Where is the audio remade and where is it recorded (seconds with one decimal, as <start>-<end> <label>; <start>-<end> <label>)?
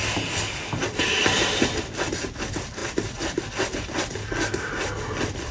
0.0-5.5 recorded